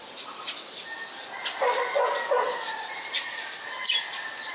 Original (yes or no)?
yes